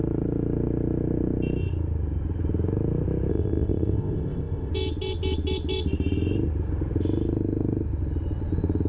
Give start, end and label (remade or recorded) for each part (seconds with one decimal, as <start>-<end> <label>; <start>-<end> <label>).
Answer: 0.0-3.3 recorded; 3.3-4.7 remade; 4.7-8.9 recorded